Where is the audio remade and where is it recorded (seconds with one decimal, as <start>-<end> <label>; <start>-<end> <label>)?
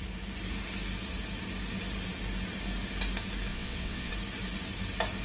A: 0.0-3.5 recorded; 3.5-4.1 remade; 4.1-5.2 recorded